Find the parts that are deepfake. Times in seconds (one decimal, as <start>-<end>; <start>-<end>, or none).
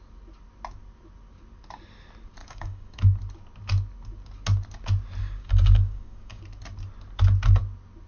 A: 2.4-3.0; 5.2-6.4